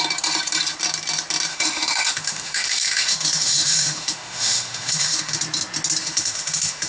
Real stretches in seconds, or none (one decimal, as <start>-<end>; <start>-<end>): 0.0-1.5; 5.4-6.0